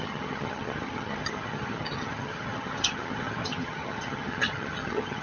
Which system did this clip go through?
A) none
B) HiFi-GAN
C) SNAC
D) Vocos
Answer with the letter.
B